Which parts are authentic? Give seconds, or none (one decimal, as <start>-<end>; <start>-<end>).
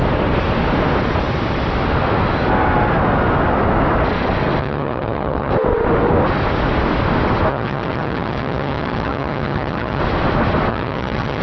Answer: 0.0-4.6; 5.5-7.5; 10.0-10.7